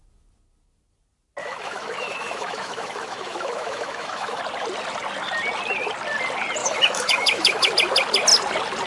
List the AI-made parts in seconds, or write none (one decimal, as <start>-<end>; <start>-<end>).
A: 1.4-4.4; 6.6-7.7